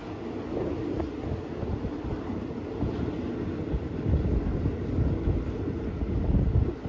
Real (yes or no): yes